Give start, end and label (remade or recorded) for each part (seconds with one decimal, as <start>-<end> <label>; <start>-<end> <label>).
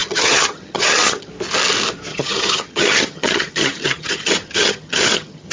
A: 0.0-1.3 remade; 1.3-2.1 recorded; 2.1-5.5 remade